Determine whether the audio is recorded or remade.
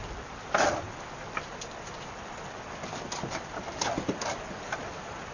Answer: recorded